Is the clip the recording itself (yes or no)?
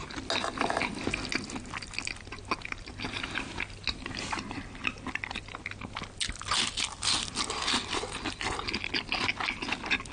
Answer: yes